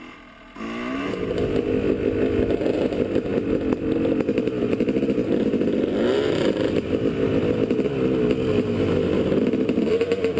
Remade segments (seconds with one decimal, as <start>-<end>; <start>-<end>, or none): none